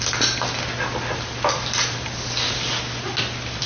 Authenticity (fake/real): real